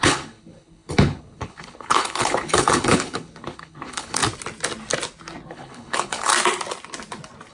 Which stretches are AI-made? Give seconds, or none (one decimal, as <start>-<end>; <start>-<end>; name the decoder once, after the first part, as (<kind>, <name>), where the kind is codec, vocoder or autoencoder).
0.0-4.2 (codec, HILCodec); 5.5-6.3